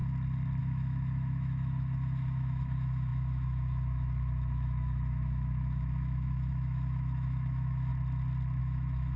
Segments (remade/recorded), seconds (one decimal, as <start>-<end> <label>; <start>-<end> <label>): 0.0-0.6 recorded; 0.6-7.9 remade; 7.9-8.6 recorded; 8.6-9.2 remade